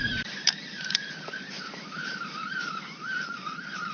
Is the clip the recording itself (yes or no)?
no